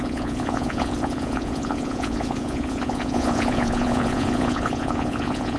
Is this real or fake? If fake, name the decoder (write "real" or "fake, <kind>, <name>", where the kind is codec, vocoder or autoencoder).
fake, vocoder, Vocos